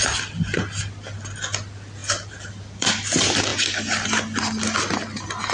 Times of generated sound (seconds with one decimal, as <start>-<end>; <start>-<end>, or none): 2.0-2.9